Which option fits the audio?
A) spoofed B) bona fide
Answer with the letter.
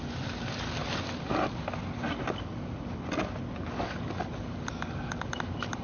B